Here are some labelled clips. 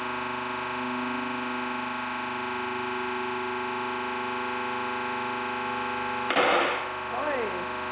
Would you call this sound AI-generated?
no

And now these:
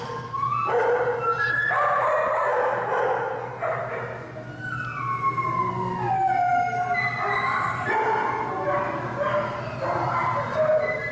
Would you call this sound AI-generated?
no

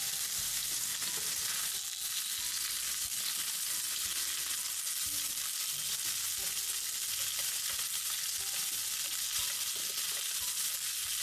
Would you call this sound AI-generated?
no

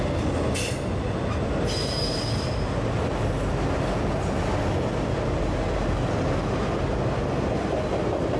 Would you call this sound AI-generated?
no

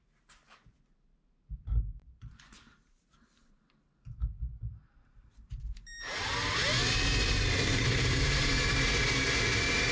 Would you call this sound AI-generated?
yes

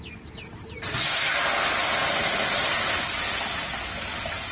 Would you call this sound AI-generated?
no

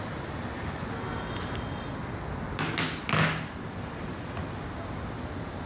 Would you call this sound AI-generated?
no